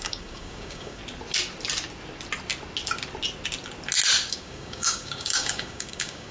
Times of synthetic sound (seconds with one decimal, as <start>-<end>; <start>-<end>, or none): 0.0-1.0; 4.3-6.3